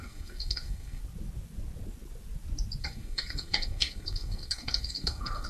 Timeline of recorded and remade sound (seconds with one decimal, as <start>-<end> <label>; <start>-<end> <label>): 0.0-1.0 remade; 1.0-2.8 recorded; 2.8-5.5 remade